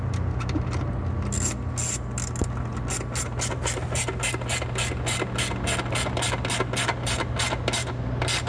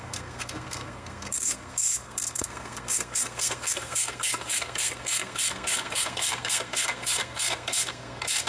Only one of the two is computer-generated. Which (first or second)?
second